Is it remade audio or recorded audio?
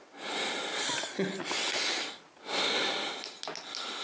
recorded